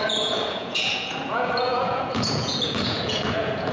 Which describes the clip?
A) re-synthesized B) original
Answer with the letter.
A